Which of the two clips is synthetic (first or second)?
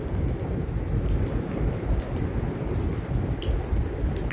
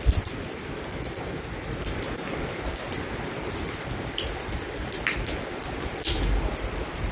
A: second